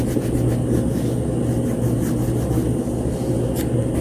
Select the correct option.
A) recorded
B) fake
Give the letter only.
A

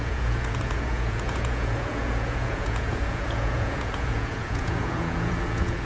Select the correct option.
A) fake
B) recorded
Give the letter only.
A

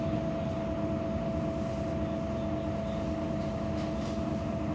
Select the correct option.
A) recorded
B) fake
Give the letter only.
A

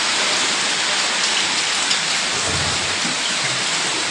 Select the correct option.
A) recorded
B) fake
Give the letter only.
A